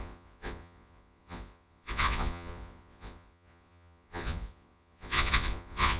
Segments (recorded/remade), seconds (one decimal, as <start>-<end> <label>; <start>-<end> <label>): 0.0-6.0 remade